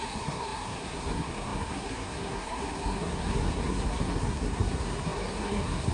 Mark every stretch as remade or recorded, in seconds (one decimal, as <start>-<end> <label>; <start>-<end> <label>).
0.0-5.9 remade